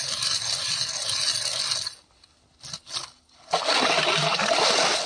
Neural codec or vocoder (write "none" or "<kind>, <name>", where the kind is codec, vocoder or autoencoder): none